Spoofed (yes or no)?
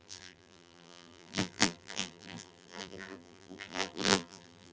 yes